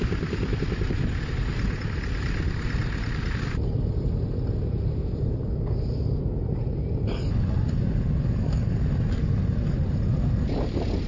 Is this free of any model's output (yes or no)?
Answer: yes